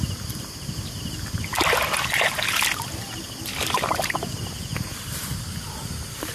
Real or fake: real